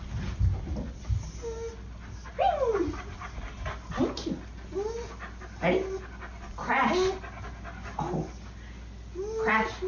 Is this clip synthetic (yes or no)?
no